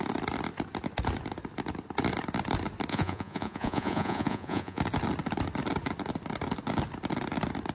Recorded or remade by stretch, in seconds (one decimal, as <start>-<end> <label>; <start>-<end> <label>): 0.0-2.9 recorded; 2.9-4.8 remade; 4.8-7.7 recorded